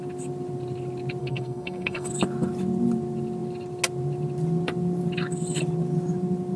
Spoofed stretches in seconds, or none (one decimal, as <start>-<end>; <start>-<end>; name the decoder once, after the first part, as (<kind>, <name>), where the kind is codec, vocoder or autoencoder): 1.2-2.1 (codec, SNAC)

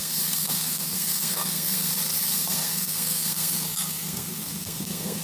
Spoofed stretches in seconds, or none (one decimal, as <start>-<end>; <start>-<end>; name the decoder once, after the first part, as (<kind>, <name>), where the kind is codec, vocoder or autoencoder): 0.0-1.9 (codec, SNAC); 2.3-5.2

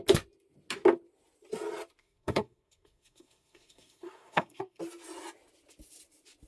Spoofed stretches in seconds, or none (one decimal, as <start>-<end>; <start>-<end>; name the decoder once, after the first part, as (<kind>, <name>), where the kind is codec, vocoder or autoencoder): 2.0-4.8 (codec, SNAC)

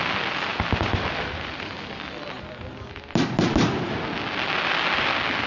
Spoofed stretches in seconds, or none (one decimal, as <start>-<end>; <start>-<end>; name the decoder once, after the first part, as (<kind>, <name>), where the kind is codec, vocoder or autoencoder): 0.5-2.9 (vocoder, BigVGAN v2)

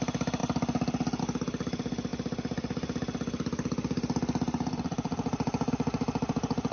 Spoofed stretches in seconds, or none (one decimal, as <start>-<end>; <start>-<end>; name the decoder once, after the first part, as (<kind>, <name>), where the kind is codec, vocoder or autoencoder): none